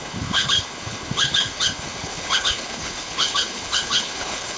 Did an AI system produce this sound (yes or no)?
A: yes